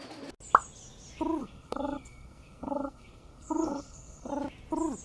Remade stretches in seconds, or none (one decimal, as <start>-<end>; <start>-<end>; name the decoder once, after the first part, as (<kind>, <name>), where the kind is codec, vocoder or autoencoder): 1.4-4.3 (codec, SNAC)